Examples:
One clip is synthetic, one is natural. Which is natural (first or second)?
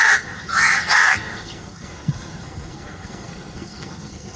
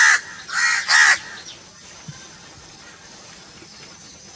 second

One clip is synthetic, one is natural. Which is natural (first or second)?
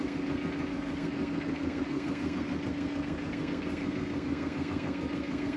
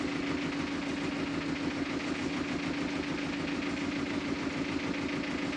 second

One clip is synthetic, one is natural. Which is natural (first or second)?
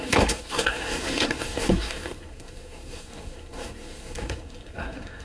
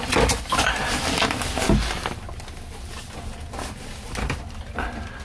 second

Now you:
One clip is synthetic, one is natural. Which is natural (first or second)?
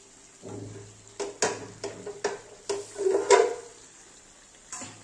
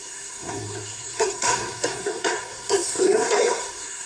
first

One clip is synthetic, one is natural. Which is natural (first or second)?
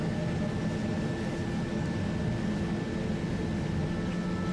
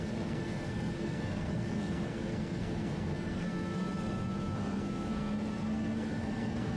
first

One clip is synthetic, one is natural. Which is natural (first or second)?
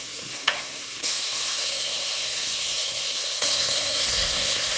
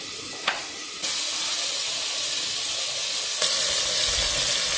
second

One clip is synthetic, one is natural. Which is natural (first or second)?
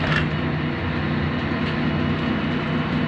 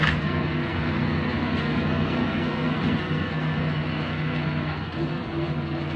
first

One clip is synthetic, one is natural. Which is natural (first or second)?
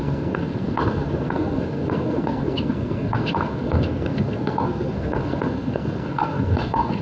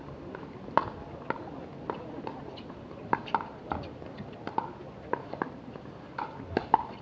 second